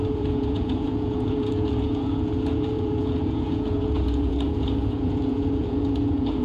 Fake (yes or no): yes